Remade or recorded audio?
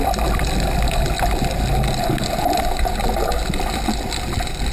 recorded